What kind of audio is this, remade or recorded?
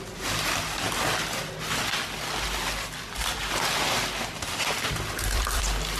remade